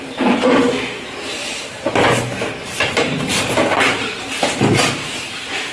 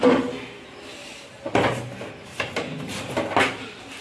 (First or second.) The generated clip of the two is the first